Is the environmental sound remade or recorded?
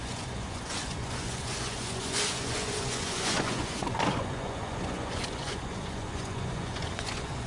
remade